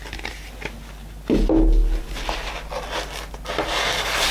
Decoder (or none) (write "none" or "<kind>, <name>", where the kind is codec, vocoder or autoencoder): none